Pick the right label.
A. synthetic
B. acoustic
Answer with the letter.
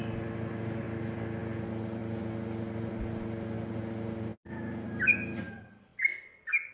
B